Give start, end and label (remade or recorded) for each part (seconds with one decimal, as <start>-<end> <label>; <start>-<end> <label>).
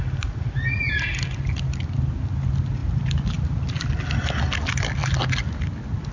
0.0-6.1 recorded